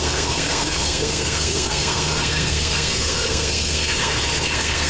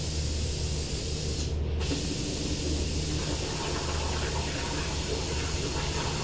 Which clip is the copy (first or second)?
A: first